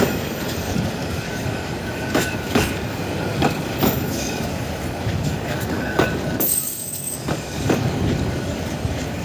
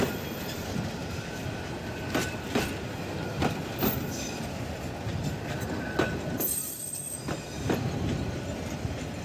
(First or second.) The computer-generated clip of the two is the first